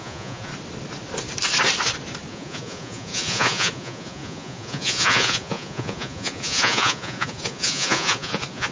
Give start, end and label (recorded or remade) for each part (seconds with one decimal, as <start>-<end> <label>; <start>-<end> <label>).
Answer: 0.0-0.5 remade; 0.5-2.3 recorded; 2.3-8.7 remade